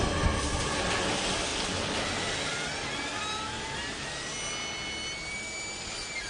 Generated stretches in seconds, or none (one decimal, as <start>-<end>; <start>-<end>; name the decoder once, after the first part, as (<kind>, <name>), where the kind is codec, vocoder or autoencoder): none